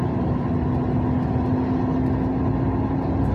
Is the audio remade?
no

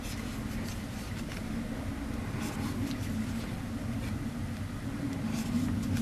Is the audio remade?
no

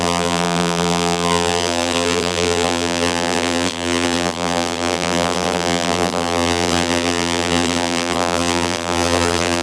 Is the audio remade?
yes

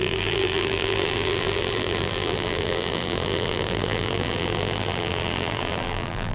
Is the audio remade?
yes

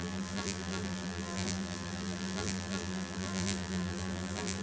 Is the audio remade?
yes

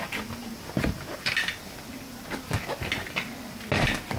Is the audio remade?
no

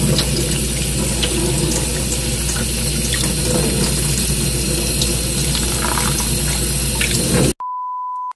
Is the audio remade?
no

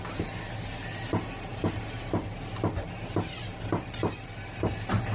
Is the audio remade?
no